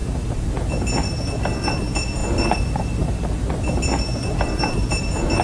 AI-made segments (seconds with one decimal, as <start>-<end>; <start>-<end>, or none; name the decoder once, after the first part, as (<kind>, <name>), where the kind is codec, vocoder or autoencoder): 0.0-0.7 (vocoder, BigVGAN v2); 2.2-5.4